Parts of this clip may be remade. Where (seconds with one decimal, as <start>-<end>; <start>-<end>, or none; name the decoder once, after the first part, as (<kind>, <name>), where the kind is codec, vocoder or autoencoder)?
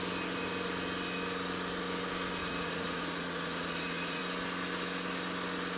2.4-4.2 (vocoder, Vocos)